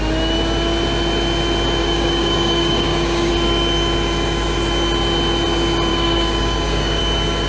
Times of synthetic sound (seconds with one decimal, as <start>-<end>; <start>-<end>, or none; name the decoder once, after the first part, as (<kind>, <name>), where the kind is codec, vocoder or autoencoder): 1.8-3.3 (codec, DAC); 5.9-7.0